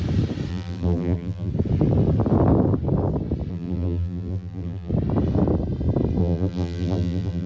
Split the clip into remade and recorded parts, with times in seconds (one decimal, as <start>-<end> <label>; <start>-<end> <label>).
0.0-0.5 recorded; 0.5-1.5 remade; 1.5-3.5 recorded; 3.5-4.9 remade; 4.9-6.2 recorded; 6.2-7.5 remade